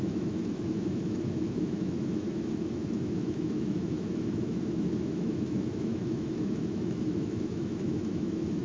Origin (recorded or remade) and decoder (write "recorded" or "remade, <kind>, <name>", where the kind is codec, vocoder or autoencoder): remade, autoencoder, DAC-VAE